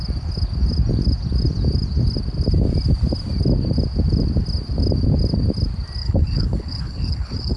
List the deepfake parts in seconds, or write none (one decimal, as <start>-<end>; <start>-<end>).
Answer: 6.0-7.6

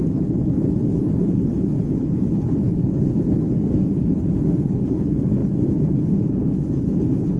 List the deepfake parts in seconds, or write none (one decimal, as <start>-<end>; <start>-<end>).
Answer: 0.0-7.4

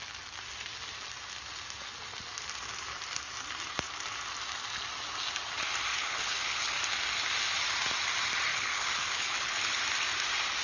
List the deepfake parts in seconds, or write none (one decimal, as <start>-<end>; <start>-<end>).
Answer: 5.9-6.7; 8.5-9.8